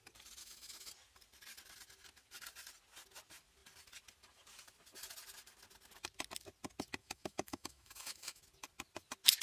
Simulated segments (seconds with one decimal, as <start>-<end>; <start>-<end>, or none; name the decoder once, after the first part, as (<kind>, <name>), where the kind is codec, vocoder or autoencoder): 0.4-0.9 (autoencoder, DAC-VAE); 7.0-8.4